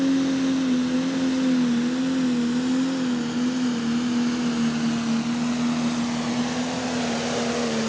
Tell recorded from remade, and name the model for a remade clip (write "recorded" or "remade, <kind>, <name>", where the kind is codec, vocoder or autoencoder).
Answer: recorded